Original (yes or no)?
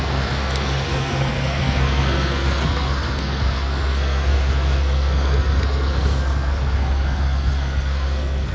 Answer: no